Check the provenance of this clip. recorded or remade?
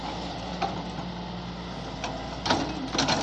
recorded